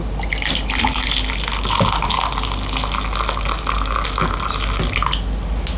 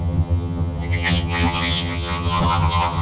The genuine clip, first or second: first